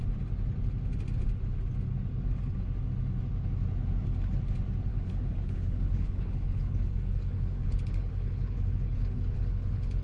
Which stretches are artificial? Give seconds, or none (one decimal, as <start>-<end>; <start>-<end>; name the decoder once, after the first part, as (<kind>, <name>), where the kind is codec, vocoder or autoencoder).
4.9-10.0 (codec, HILCodec)